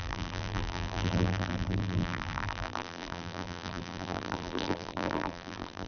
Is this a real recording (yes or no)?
no